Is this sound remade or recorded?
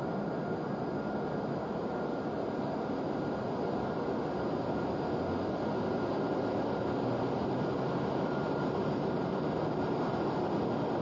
recorded